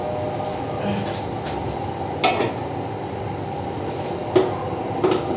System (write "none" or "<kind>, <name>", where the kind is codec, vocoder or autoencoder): none